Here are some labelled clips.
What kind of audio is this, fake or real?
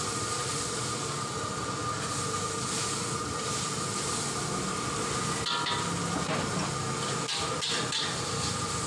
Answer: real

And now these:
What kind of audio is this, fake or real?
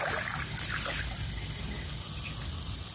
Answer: real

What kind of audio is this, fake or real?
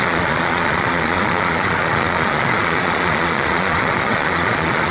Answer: fake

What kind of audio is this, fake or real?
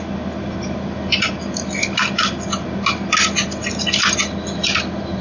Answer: real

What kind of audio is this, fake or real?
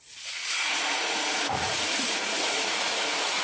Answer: fake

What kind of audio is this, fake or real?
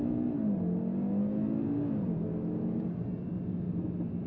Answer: real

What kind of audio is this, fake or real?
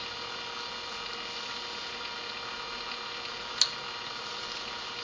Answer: real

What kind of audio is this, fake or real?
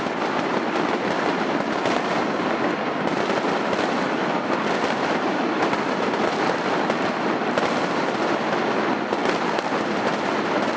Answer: real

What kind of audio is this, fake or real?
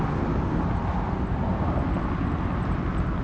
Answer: real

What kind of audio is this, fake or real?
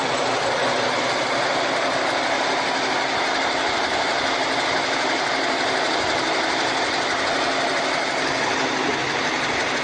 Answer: real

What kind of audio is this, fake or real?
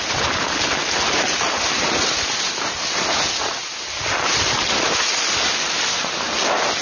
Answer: real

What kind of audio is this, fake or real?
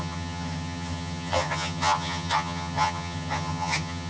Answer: fake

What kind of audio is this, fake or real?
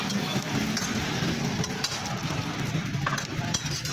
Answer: real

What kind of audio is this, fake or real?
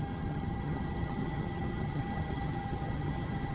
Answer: fake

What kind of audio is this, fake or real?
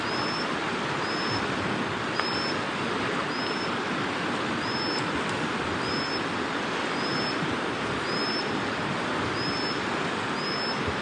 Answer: real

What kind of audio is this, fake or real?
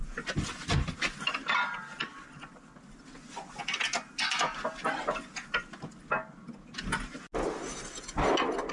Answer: real